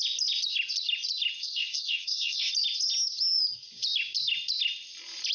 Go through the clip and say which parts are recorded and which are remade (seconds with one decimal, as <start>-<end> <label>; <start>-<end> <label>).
0.0-1.4 recorded; 1.4-2.5 remade; 2.5-5.3 recorded